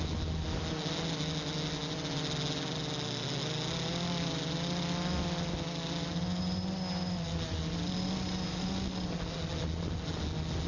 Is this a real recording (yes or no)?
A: yes